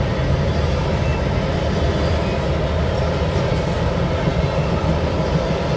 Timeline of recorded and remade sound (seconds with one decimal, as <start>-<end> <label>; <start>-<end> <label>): 0.0-5.8 recorded